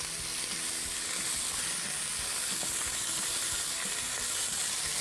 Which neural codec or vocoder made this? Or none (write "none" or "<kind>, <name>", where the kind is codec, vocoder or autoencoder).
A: none